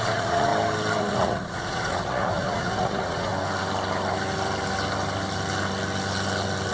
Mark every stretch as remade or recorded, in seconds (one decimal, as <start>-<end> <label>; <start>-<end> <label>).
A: 0.0-0.5 remade; 0.5-1.0 recorded; 1.0-3.3 remade; 3.3-6.7 recorded